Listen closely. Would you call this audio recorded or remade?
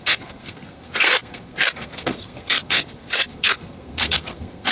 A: remade